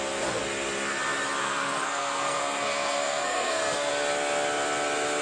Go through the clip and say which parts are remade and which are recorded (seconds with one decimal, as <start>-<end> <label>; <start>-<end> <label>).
0.0-1.4 recorded; 1.4-3.9 remade; 3.9-5.2 recorded